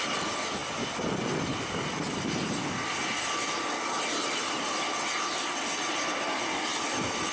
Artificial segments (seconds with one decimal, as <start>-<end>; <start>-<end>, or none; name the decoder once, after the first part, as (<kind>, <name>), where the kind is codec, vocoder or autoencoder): none